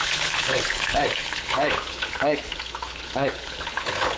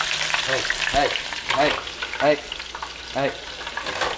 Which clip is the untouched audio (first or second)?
second